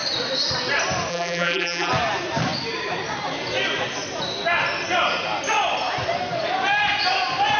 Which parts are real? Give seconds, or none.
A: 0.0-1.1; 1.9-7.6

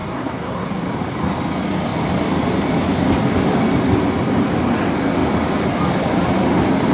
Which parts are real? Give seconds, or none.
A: 0.7-6.9

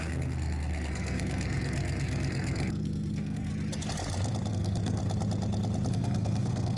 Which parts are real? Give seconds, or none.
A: 3.5-4.5; 5.0-5.9

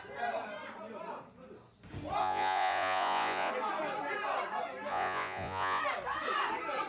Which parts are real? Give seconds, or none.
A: 0.0-2.2; 3.5-4.9; 5.8-6.9

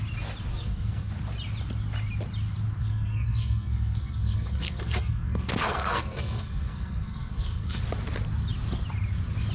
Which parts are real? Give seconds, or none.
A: 0.0-0.5; 1.1-2.8; 7.8-9.5